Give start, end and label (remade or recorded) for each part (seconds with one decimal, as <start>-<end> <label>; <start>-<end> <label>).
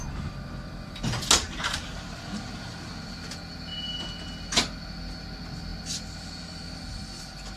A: 0.0-7.6 recorded